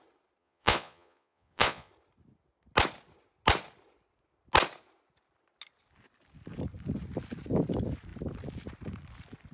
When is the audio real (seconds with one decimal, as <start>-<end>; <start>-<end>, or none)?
0.0-0.4; 1.9-9.5